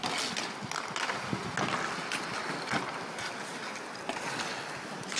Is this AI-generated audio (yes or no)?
no